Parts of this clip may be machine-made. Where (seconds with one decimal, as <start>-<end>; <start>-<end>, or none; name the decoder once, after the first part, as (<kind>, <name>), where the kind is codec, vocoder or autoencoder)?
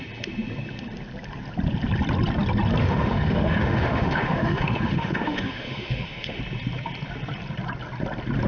2.8-6.4 (autoencoder, DAC-VAE)